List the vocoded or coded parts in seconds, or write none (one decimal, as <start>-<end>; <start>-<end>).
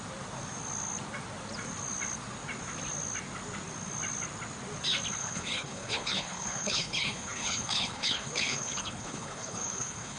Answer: 5.2-10.2